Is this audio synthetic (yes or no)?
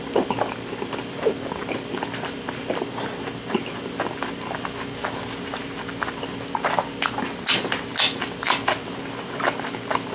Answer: no